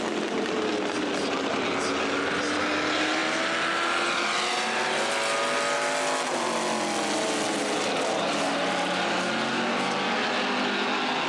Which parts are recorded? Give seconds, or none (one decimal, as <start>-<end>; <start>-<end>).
0.0-11.3